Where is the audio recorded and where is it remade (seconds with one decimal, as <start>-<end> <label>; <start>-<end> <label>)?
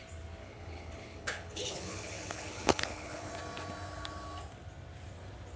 0.0-0.4 recorded; 0.4-3.3 remade; 3.3-5.6 recorded